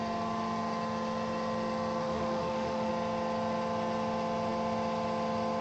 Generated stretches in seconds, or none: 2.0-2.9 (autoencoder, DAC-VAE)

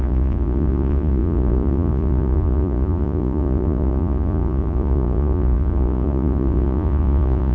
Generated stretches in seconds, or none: 0.0-7.5 (vocoder, Vocos)

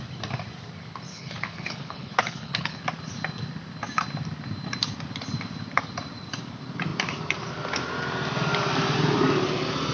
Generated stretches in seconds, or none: 1.1-2.8 (codec, HILCodec)

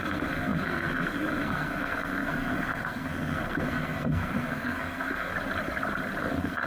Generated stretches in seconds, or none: 0.0-5.3 (codec, SNAC); 6.2-6.7

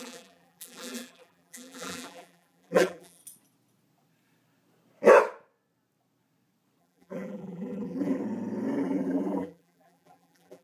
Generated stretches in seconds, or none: 0.0-3.2 (vocoder, BigVGAN v2); 6.8-8.2; 8.8-10.6

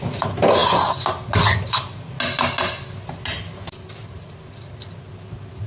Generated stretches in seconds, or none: none

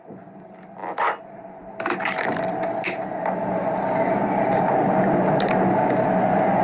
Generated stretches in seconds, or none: none

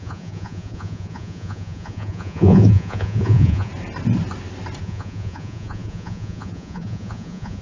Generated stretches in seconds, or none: 0.0-3.7 (vocoder, Vocos); 4.8-7.6